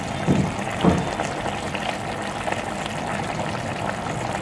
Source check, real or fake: real